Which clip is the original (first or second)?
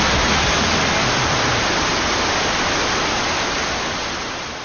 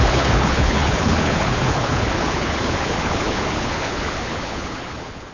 first